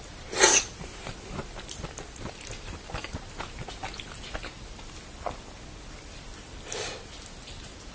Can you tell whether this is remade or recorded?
recorded